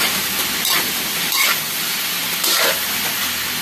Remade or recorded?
recorded